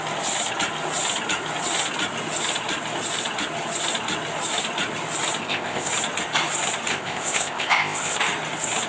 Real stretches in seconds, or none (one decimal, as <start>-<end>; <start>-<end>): 0.0-5.4; 5.9-6.9; 8.2-8.9